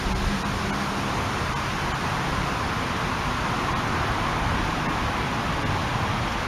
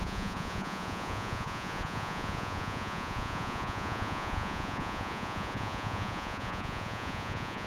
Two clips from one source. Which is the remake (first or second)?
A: second